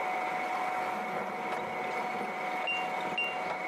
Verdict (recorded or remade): recorded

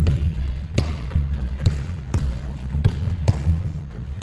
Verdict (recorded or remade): remade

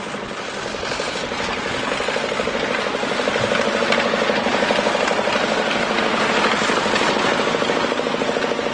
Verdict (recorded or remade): recorded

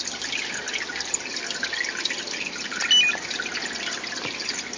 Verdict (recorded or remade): recorded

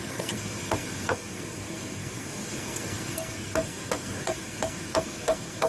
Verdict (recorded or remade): remade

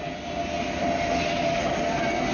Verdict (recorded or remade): recorded